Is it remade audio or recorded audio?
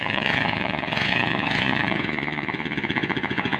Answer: remade